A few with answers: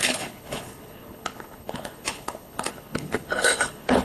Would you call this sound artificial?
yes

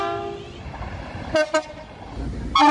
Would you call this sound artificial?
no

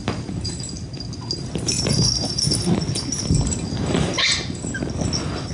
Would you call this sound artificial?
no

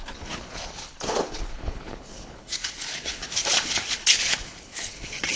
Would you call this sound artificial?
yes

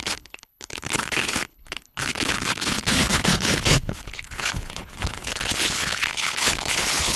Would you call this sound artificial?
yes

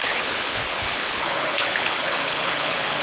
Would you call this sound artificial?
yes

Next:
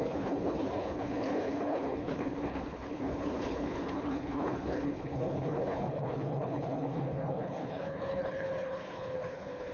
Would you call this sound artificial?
yes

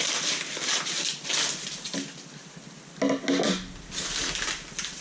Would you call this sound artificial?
no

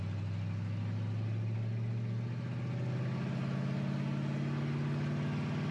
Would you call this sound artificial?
no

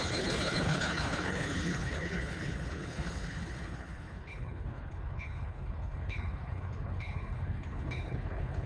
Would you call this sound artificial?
yes